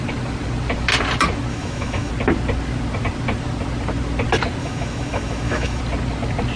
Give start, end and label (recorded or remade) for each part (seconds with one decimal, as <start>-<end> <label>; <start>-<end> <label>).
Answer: 0.0-1.5 recorded; 1.5-2.1 remade; 2.1-4.6 recorded; 4.6-5.8 remade; 5.8-6.6 recorded